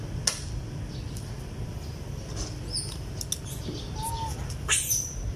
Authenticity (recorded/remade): recorded